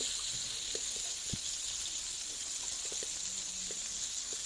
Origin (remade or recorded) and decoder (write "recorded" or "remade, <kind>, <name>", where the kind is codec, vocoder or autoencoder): recorded